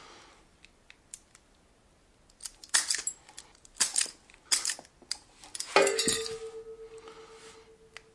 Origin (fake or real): real